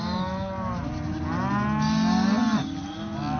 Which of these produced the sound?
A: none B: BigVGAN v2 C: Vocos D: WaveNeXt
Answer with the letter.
A